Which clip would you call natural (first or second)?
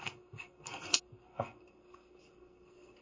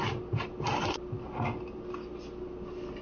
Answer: second